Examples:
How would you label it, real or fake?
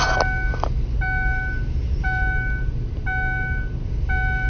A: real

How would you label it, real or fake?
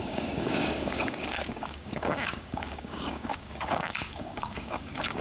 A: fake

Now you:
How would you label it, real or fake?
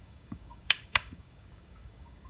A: fake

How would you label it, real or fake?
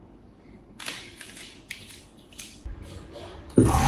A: fake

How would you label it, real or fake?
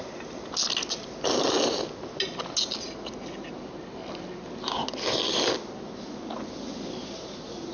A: real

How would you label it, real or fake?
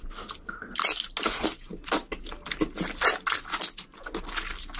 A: real